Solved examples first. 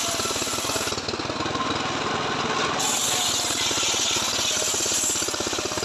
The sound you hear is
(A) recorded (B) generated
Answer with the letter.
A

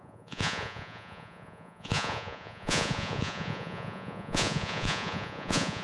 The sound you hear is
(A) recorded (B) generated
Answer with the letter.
B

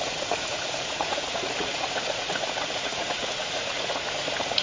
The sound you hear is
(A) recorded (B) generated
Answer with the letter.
B